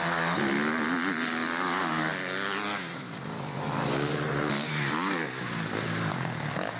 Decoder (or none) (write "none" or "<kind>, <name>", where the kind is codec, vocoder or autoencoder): none